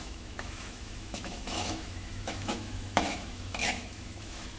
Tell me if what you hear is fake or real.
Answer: fake